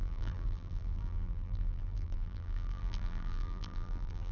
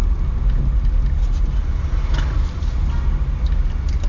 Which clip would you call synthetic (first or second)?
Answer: first